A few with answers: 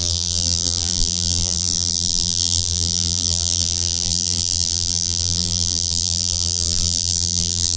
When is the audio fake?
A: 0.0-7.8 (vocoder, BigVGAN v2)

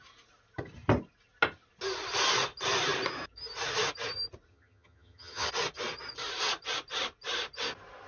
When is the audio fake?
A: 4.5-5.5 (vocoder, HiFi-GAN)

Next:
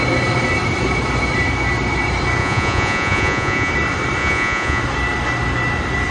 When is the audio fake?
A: 2.4-3.7 (vocoder, Vocos); 4.2-4.8